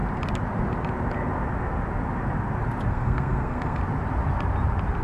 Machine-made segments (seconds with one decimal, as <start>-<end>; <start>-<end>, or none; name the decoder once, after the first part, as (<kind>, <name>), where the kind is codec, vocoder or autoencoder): 2.9-3.8 (codec, SNAC)